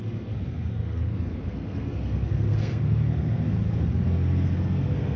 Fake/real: fake